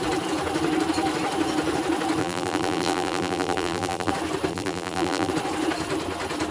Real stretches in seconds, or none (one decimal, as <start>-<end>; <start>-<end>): 0.0-2.2; 4.1-4.5; 5.3-6.5